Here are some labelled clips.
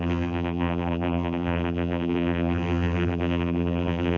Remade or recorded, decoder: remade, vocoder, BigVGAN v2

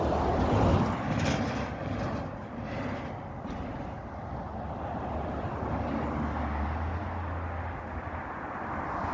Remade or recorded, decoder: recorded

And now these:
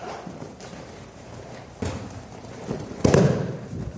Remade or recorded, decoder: remade, vocoder, BigVGAN v2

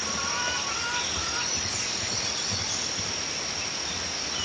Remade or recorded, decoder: recorded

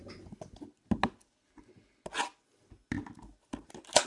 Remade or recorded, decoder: recorded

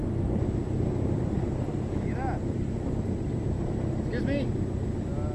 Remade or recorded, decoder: recorded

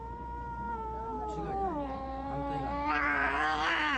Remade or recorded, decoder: remade, vocoder, BigVGAN v2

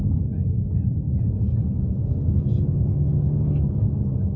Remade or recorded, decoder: recorded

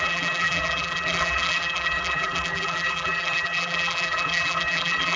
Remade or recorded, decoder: remade, vocoder, BigVGAN v2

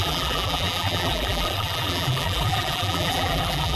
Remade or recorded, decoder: remade, vocoder, BigVGAN v2